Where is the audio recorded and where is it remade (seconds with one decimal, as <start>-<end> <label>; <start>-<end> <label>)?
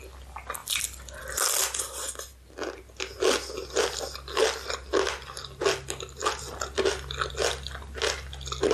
0.0-8.7 recorded